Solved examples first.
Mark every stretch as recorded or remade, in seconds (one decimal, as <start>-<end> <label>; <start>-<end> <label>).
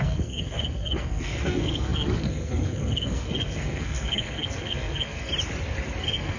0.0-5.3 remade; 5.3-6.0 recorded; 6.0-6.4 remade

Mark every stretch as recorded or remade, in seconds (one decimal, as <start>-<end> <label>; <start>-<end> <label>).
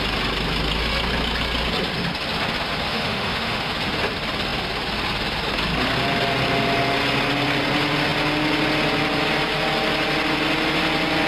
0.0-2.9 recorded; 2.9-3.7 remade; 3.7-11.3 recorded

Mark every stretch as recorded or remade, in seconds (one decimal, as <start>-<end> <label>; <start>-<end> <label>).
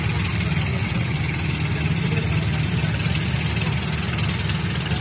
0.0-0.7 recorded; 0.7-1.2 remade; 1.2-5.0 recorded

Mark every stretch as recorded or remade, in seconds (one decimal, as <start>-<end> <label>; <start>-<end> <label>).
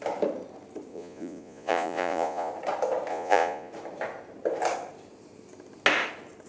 0.0-0.9 recorded; 0.9-2.5 remade; 2.5-3.1 recorded; 3.1-3.7 remade; 3.7-6.5 recorded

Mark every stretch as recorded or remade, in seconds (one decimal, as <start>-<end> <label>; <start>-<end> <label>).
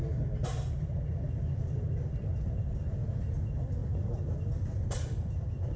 0.0-3.8 recorded; 3.8-5.8 remade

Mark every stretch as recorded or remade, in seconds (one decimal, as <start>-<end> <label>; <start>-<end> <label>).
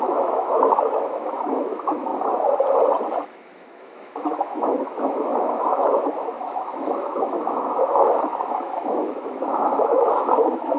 0.0-2.1 remade; 2.1-3.2 recorded; 3.2-10.8 remade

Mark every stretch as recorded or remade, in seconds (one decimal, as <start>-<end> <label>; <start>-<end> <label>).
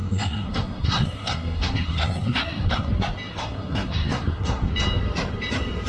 0.0-2.9 remade; 2.9-3.3 recorded; 3.3-4.7 remade; 4.7-5.9 recorded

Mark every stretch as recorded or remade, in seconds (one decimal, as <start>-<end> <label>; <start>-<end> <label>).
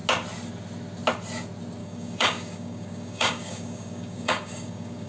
0.0-1.8 recorded; 1.8-5.1 remade